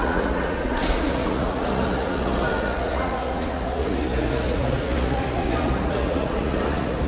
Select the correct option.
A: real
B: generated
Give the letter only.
B